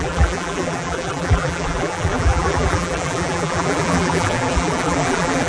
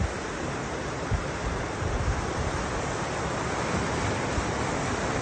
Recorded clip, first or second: second